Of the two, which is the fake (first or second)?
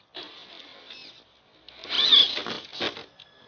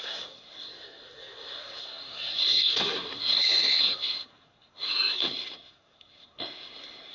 second